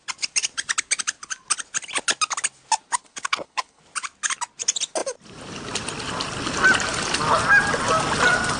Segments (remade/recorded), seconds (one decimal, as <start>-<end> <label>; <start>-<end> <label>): 0.0-3.0 recorded; 3.0-3.8 remade; 3.8-8.6 recorded